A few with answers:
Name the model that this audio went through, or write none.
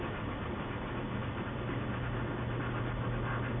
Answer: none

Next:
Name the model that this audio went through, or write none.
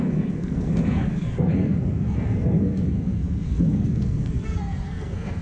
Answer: codec, SNAC